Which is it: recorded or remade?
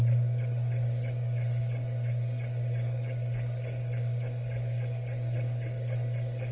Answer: remade